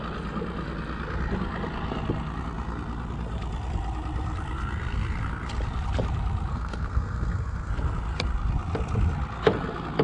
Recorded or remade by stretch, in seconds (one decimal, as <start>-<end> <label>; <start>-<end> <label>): 0.0-6.5 recorded; 6.5-7.7 remade; 7.7-10.0 recorded